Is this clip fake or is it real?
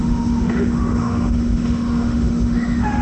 fake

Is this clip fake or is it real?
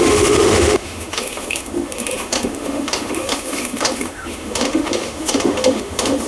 fake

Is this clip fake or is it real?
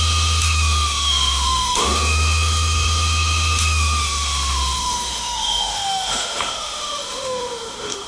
fake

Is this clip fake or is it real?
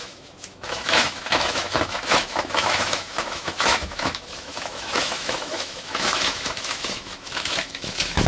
fake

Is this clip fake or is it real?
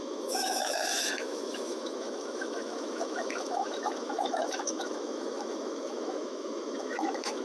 fake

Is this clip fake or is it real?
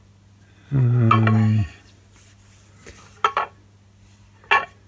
real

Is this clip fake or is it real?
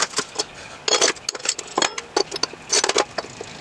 real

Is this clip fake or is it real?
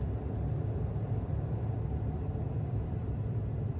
real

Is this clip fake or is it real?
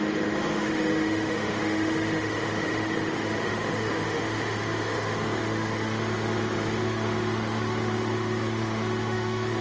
fake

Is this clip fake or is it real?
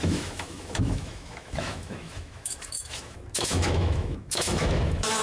fake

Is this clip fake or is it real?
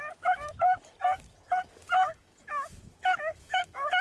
fake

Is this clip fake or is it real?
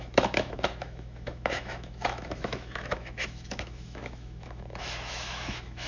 fake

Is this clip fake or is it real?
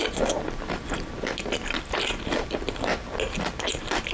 real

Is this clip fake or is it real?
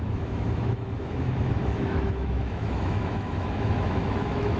fake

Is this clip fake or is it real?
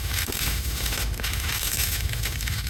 fake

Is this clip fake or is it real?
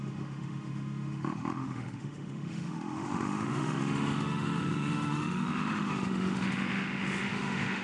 fake